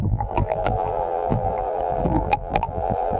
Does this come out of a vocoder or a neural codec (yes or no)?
yes